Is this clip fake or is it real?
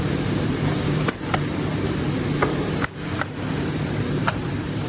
fake